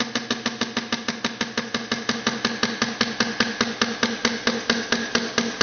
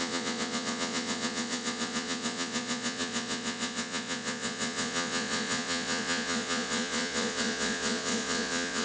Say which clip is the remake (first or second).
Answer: second